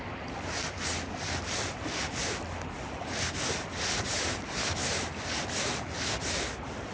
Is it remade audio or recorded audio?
recorded